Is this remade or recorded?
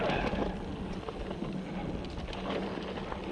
recorded